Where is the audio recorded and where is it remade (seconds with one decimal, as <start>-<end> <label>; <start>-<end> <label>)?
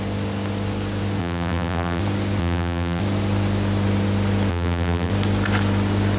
0.0-1.2 recorded; 1.2-2.0 remade; 2.0-2.4 recorded; 2.4-3.0 remade; 3.0-4.5 recorded; 4.5-5.1 remade; 5.1-6.2 recorded